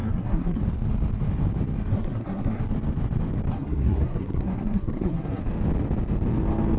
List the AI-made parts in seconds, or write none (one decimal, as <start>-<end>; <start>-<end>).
0.0-0.6; 1.9-2.6; 3.5-5.4

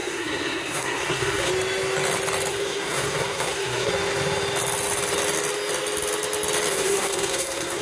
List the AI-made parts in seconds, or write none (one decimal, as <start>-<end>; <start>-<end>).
0.0-1.5; 2.5-3.9; 6.7-7.8

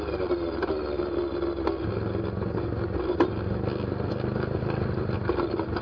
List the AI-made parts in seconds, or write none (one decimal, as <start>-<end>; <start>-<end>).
none